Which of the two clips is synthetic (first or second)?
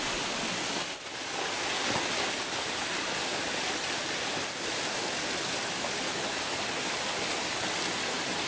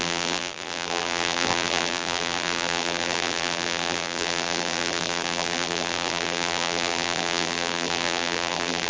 second